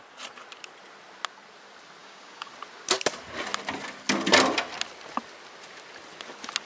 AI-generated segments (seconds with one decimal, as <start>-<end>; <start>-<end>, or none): 2.0-2.5